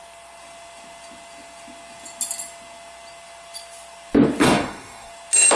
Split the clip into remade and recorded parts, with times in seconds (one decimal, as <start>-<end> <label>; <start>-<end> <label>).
0.0-4.4 recorded; 4.4-5.1 remade; 5.1-5.6 recorded